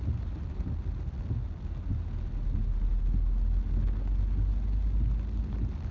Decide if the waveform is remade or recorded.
recorded